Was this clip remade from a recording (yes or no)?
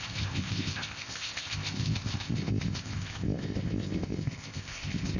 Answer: yes